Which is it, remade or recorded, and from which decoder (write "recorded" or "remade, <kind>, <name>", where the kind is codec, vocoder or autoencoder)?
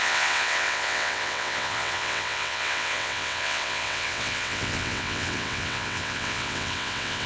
remade, vocoder, WaveNeXt